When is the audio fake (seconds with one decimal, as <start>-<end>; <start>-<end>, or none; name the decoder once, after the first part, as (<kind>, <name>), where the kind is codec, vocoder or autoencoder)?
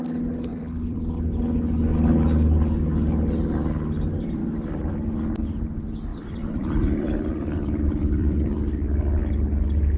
0.5-1.0 (vocoder, BigVGAN v2); 4.4-4.9; 6.1-10.0